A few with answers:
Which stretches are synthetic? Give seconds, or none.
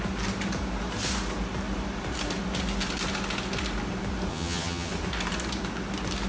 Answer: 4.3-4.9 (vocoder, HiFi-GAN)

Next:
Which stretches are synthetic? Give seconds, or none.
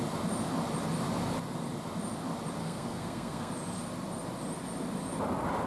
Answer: 2.6-3.5 (codec, SNAC)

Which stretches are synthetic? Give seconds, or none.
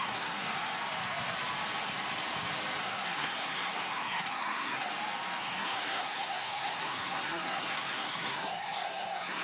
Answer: 0.0-0.5 (codec, SNAC); 2.8-4.9; 5.4-9.4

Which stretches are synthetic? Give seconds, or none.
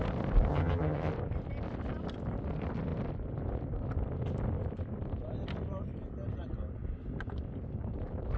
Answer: 0.5-1.1 (vocoder, HiFi-GAN)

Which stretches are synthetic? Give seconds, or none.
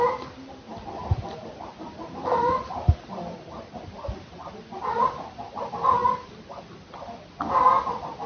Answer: none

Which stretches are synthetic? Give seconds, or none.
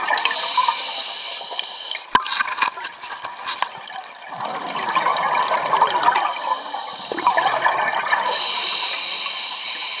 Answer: 7.9-9.0 (vocoder, BigVGAN v2)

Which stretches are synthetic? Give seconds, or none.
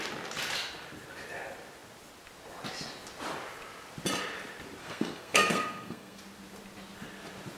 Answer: 4.8-6.2 (codec, SNAC)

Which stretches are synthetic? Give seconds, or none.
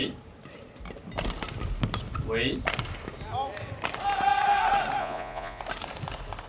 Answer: 5.0-5.6 (vocoder, Vocos)